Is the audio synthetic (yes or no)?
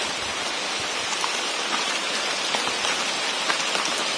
no